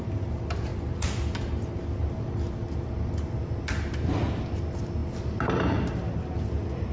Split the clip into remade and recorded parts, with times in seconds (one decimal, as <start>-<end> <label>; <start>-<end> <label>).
0.0-6.9 recorded